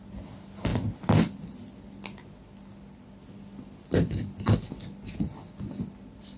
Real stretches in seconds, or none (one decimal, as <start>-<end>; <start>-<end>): 0.0-6.4